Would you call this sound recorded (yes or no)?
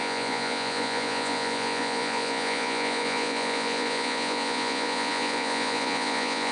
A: no